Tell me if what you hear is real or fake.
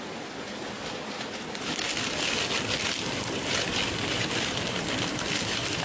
real